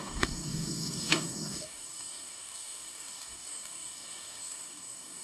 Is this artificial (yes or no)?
yes